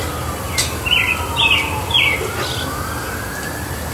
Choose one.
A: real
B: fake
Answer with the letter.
A